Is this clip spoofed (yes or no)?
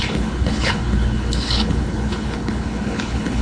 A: yes